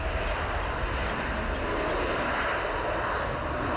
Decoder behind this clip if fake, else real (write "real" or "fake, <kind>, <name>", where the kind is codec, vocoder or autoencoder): real